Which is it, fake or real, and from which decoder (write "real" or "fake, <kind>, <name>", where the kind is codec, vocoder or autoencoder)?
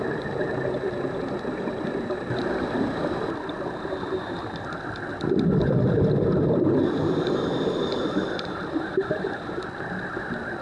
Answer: real